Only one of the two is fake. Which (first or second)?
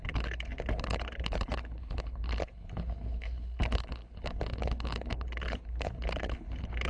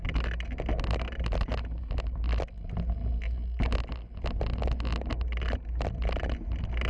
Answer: first